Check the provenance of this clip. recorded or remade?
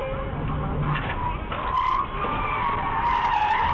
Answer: recorded